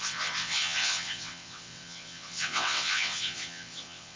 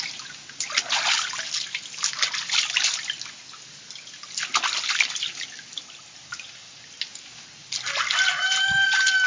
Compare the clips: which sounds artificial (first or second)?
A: first